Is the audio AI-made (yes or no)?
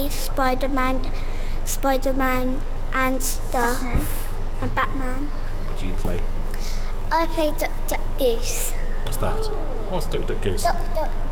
yes